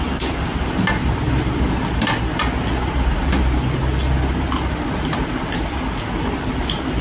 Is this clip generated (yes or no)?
no